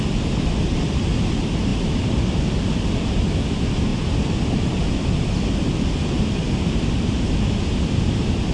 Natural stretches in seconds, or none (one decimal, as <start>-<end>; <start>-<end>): 0.0-8.5